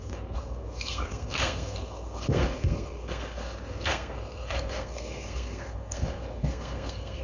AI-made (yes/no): yes